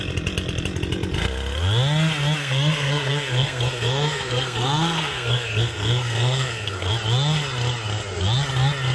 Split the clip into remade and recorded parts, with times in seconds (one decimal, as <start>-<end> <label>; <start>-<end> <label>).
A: 0.0-2.4 recorded; 2.4-6.9 remade; 6.9-8.9 recorded